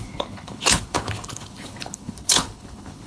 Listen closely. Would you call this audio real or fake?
fake